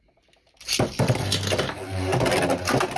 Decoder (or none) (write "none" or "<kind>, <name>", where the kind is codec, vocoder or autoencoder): none